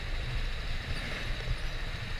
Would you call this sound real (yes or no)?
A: yes